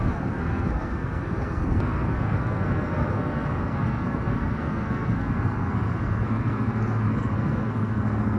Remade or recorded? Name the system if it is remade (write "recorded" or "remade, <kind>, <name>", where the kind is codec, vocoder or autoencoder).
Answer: remade, codec, SNAC